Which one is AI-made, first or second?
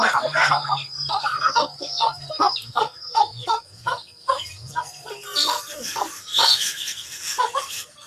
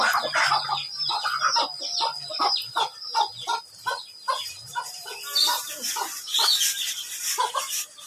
first